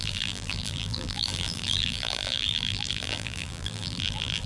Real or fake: fake